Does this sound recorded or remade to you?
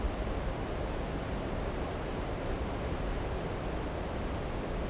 recorded